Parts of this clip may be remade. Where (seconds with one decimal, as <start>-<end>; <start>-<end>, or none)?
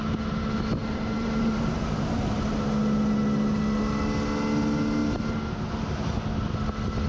0.8-2.4